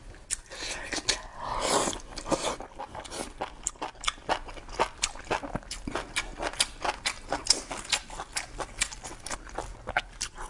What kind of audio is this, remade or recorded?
recorded